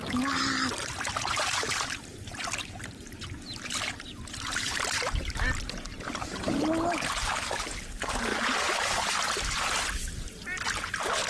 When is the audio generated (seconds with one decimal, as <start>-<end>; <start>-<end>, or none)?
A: none